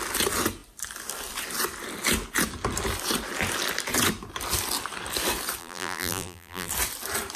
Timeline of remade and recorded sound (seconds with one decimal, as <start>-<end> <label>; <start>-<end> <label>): 0.0-5.6 recorded; 5.6-6.7 remade; 6.7-7.4 recorded